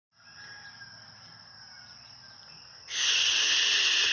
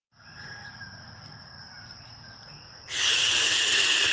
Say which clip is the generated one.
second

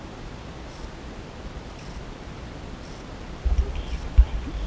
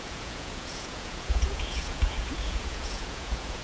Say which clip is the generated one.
second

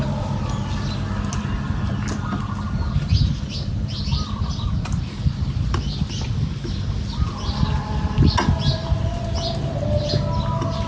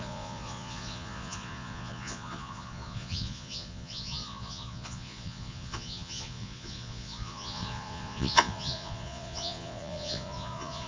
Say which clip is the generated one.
second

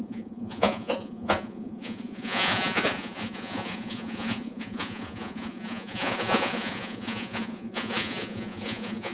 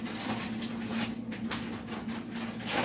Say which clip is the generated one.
first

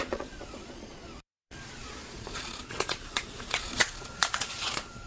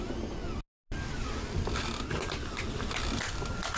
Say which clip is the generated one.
first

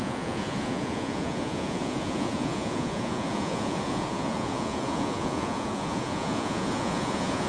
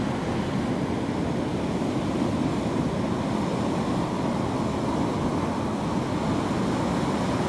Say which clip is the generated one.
first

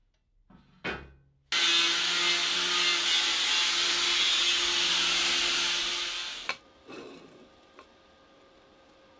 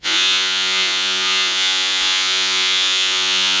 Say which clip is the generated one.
second